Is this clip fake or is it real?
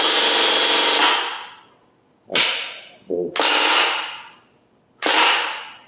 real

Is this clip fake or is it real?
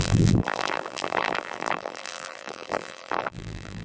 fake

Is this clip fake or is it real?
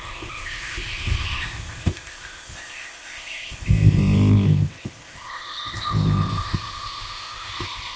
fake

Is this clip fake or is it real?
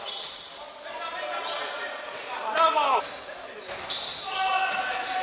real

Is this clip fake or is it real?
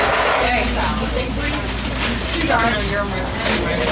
real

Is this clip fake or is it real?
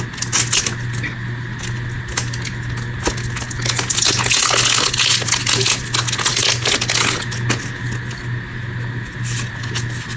real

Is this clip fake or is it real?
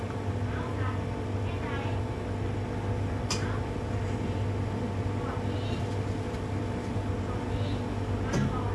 real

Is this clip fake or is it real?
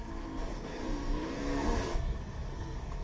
fake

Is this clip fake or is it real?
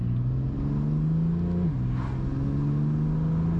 real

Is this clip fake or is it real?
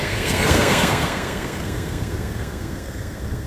fake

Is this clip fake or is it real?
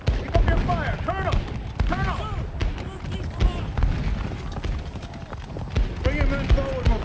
real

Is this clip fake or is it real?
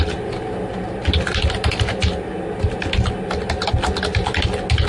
real